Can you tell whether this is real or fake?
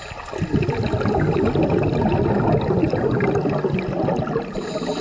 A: real